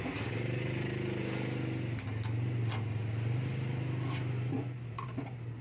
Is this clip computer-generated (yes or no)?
no